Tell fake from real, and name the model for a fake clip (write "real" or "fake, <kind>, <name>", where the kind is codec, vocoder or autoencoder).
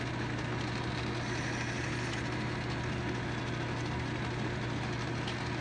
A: real